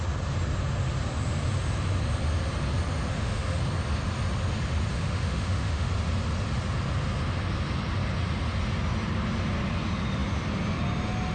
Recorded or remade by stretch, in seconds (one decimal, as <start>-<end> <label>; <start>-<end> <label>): 0.0-3.1 recorded; 3.1-3.6 remade; 3.6-4.9 recorded; 4.9-5.9 remade; 5.9-11.3 recorded